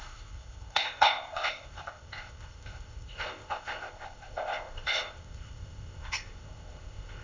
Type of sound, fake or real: fake